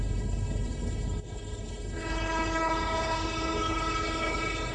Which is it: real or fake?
fake